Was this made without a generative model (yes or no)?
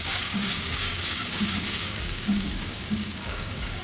no